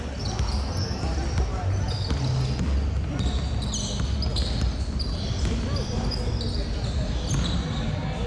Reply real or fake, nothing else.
real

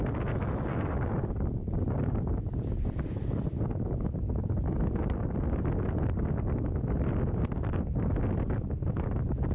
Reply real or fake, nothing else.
real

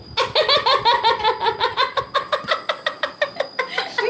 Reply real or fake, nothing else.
real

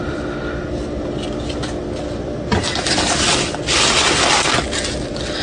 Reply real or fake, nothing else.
real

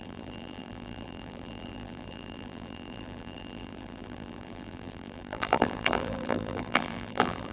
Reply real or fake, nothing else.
fake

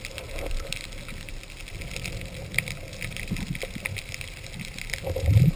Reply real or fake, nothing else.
real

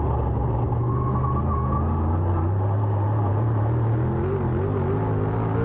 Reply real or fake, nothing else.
real